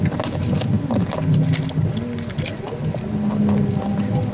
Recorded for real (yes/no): yes